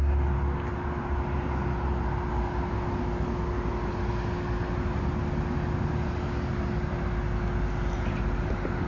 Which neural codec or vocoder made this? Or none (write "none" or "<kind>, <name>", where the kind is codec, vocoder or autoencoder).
none